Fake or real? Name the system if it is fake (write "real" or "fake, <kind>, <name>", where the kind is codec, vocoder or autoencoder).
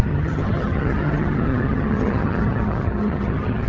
fake, vocoder, HiFi-GAN